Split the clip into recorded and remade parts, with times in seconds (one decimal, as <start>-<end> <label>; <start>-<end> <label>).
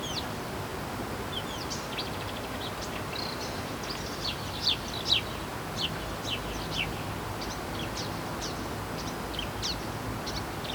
0.0-10.7 recorded